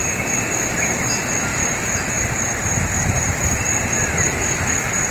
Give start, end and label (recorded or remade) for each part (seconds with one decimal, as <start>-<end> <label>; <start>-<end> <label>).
0.0-1.1 remade; 1.1-1.5 recorded; 1.5-4.2 remade; 4.2-5.1 recorded

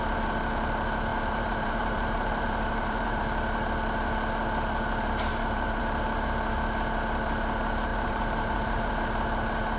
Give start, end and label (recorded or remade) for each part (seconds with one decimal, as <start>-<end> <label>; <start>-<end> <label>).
0.0-1.1 recorded; 1.1-3.2 remade; 3.2-5.3 recorded; 5.3-5.8 remade; 5.8-7.9 recorded; 7.9-8.9 remade; 8.9-9.8 recorded

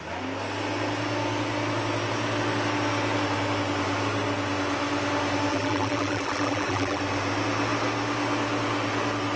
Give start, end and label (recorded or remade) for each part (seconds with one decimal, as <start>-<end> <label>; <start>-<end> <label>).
0.0-5.5 recorded; 5.5-7.0 remade; 7.0-9.4 recorded

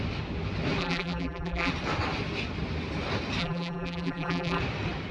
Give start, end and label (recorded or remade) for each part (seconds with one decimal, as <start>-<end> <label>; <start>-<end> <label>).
0.0-0.8 recorded; 0.8-1.7 remade; 1.7-3.4 recorded; 3.4-4.6 remade; 4.6-5.1 recorded

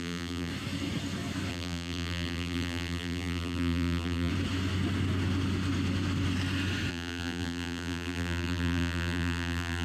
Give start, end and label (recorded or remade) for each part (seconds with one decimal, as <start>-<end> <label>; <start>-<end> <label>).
0.0-0.5 remade; 0.5-1.5 recorded; 1.5-4.3 remade; 4.3-6.9 recorded; 6.9-9.8 remade

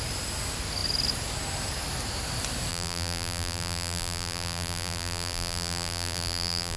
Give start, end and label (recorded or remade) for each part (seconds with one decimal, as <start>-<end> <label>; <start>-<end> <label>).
0.0-2.7 recorded; 2.7-6.8 remade

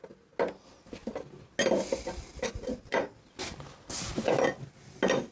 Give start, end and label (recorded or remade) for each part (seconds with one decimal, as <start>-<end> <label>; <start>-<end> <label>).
0.0-5.3 recorded

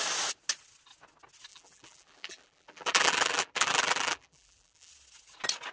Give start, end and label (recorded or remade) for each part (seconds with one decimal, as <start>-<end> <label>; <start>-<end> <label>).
0.0-1.5 recorded; 1.5-4.9 remade; 4.9-5.7 recorded